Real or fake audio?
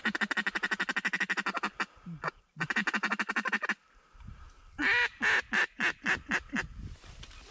real